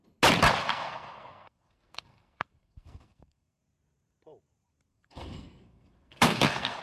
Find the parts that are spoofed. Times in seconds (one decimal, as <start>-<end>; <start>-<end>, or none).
0.6-3.6; 4.9-6.8